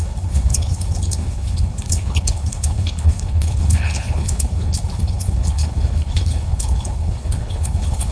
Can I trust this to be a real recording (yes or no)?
no